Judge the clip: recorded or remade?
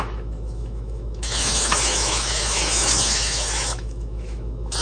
remade